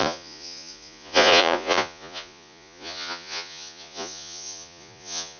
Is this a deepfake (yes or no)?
yes